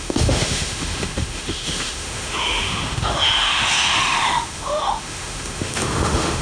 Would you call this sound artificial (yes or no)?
yes